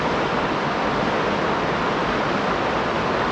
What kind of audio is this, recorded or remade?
recorded